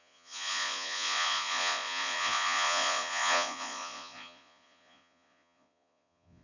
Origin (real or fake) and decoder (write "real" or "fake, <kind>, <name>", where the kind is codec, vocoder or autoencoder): fake, vocoder, Vocos